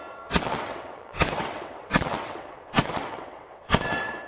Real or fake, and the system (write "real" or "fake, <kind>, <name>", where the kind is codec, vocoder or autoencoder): fake, vocoder, WaveNeXt